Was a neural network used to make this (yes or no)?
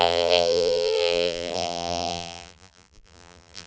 yes